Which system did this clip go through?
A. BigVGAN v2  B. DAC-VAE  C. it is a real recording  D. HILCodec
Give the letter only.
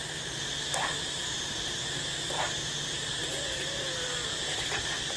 C